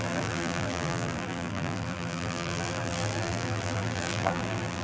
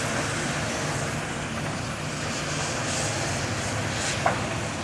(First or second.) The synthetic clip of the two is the first